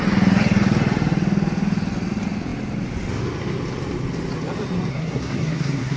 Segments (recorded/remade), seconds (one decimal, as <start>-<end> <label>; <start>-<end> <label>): 0.0-4.9 recorded; 4.9-6.0 remade